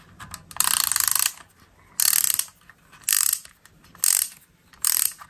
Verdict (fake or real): real